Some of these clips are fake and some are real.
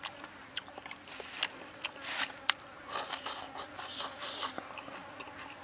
real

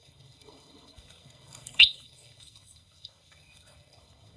fake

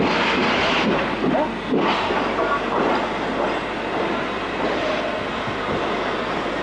real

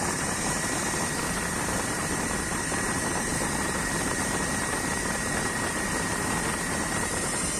fake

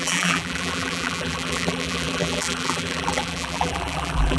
fake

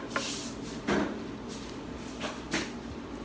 real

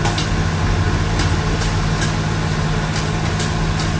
real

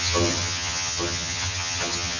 fake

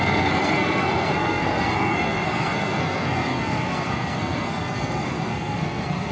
fake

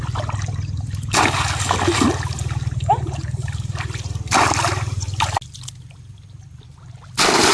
real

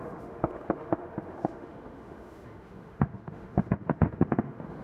fake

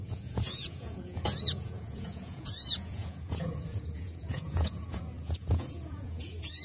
fake